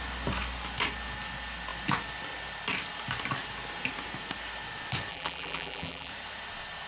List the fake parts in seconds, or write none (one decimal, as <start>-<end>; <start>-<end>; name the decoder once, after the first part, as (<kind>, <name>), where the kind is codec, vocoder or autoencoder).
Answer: 5.1-6.1 (vocoder, BigVGAN v2)